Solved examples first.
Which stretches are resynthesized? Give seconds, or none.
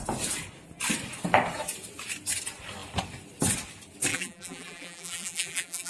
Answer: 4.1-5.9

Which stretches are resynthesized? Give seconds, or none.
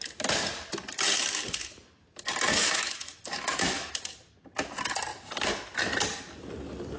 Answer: 2.5-3.9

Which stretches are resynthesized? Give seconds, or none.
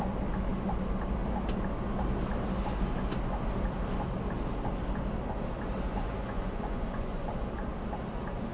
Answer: 5.9-7.3